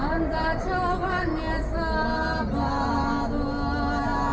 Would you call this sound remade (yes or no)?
no